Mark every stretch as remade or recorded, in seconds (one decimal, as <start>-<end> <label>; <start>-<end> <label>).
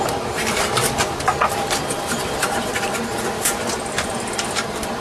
0.0-5.0 recorded